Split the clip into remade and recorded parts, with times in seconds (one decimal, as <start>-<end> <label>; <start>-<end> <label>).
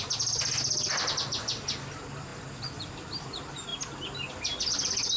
0.0-5.2 recorded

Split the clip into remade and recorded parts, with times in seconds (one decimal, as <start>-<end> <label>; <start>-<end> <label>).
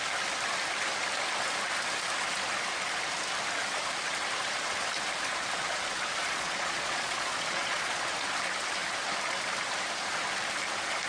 0.0-6.2 recorded; 6.2-8.0 remade; 8.0-11.1 recorded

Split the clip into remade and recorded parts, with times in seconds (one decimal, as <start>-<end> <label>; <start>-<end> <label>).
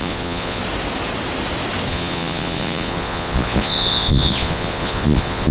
0.0-0.6 remade; 0.6-1.9 recorded; 1.9-5.5 remade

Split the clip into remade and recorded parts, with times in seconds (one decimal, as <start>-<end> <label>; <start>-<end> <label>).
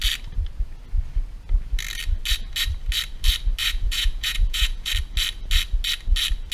0.0-3.6 recorded; 3.6-4.9 remade; 4.9-6.5 recorded